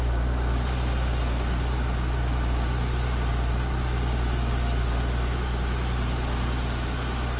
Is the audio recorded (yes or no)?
yes